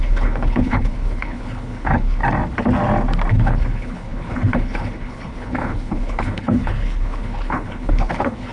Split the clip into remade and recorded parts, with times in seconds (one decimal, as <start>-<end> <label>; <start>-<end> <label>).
0.0-2.2 remade; 2.2-3.3 recorded; 3.3-8.5 remade